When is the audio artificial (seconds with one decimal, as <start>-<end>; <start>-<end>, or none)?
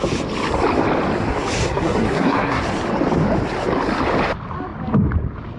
1.6-2.6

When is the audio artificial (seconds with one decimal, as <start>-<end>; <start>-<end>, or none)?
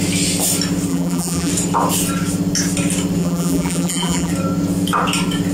0.9-1.5; 3.2-4.3